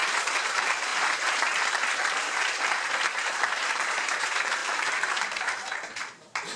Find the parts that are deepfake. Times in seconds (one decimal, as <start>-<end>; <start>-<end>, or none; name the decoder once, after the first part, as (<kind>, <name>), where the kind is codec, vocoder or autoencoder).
0.5-6.6 (vocoder, BigVGAN v2)